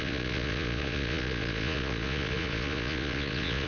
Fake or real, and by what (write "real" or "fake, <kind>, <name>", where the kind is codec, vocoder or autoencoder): fake, vocoder, Vocos